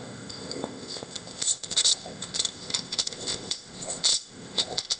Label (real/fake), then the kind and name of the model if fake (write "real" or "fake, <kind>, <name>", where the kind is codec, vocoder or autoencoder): fake, codec, ZipCodec